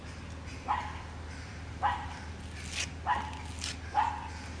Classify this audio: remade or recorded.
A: recorded